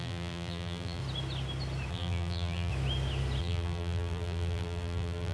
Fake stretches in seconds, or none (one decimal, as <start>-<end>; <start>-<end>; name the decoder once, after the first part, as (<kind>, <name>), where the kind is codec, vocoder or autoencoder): 0.0-1.0 (vocoder, BigVGAN v2); 1.9-2.7; 3.4-5.3